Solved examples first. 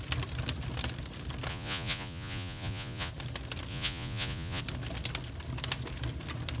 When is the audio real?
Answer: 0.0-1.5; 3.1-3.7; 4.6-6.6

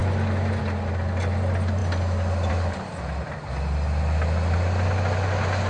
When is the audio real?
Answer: 0.0-5.7